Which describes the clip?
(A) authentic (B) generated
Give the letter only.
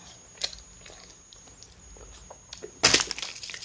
A